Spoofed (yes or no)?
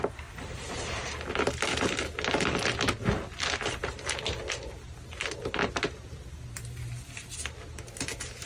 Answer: no